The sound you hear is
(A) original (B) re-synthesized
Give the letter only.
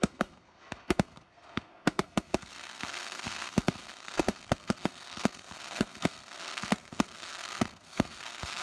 B